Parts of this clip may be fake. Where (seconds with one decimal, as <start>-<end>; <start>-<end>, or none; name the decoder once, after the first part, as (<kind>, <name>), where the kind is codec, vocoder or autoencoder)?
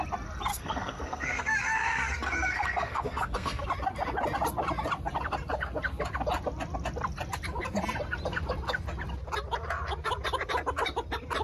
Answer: 0.5-3.6 (codec, SNAC)